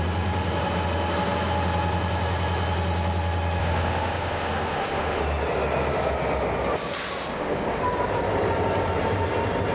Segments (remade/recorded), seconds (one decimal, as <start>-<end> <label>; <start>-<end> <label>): 0.0-3.6 recorded; 3.6-5.2 remade; 5.2-7.3 recorded; 7.3-7.8 remade; 7.8-9.7 recorded